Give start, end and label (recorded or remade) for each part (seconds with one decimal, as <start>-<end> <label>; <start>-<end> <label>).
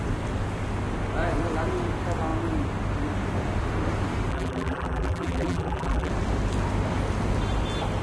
0.0-4.3 recorded; 4.3-6.1 remade; 6.1-8.0 recorded